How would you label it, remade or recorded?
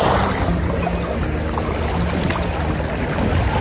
recorded